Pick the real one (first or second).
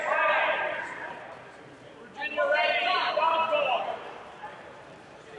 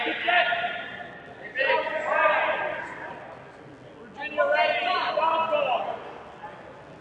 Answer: second